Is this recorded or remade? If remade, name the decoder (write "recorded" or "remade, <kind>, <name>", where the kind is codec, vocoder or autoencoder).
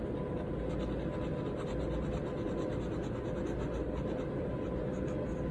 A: recorded